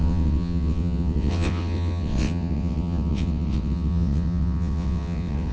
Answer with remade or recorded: remade